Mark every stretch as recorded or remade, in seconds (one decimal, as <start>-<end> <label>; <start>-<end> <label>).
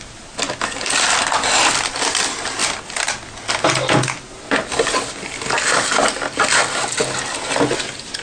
0.0-8.2 recorded